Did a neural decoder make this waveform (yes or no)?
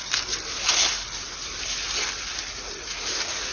no